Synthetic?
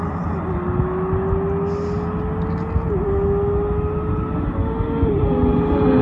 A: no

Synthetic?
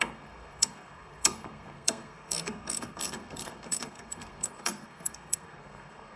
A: yes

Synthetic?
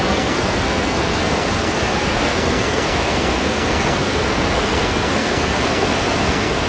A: yes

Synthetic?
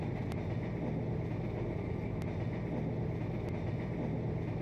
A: no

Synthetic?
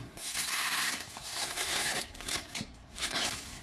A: yes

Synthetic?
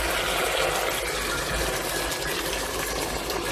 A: no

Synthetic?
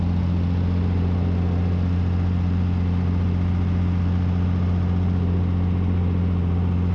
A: no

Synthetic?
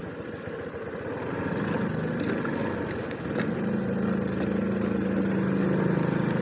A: no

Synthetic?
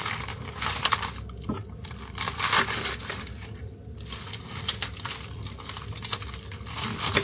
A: no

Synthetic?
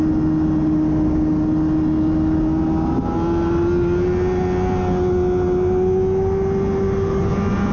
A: no